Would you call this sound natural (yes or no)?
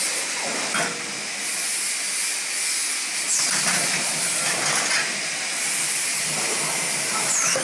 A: yes